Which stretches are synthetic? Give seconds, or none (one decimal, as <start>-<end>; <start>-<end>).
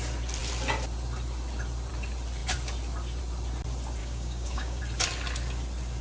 4.0-4.8